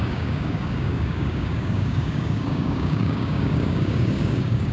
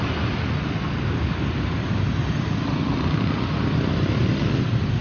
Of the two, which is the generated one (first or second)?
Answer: first